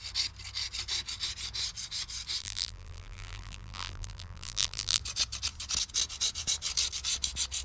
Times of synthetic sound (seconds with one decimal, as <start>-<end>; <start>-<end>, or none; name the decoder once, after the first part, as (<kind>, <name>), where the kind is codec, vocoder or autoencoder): 2.4-5.0 (vocoder, BigVGAN v2)